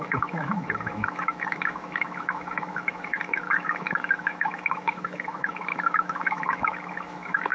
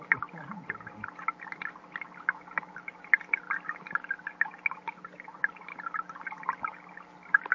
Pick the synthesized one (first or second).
first